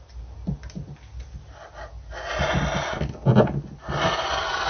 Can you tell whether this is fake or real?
real